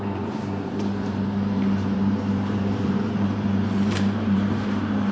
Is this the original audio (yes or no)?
no